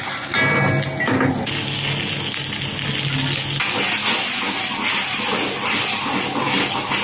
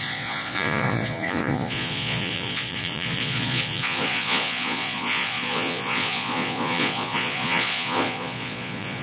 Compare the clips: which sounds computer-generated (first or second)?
second